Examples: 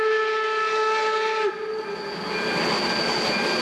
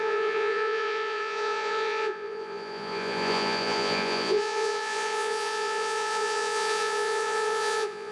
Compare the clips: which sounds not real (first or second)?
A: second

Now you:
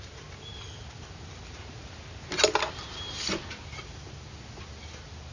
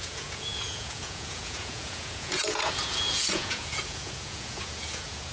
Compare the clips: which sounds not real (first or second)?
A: second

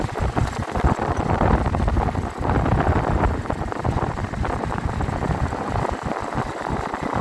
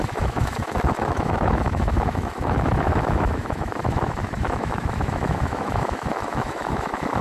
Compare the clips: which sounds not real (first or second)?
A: second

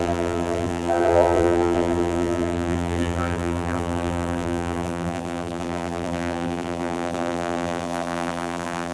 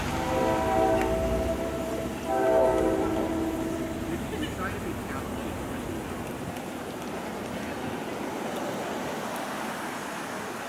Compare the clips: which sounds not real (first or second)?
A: first